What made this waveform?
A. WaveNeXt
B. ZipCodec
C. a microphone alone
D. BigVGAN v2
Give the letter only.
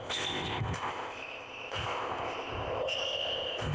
B